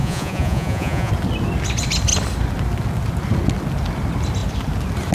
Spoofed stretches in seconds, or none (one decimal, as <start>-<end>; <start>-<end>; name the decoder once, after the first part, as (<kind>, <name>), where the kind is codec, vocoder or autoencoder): 0.0-1.1 (vocoder, Vocos)